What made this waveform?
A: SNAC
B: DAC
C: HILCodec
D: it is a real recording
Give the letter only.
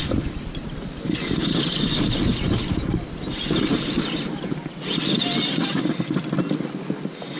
D